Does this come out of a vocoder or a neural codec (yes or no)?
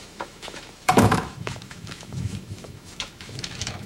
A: yes